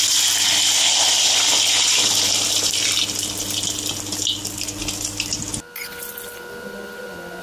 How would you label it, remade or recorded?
recorded